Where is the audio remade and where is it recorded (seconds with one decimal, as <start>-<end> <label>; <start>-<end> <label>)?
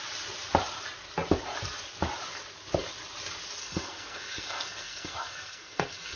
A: 0.0-3.6 recorded; 3.6-6.2 remade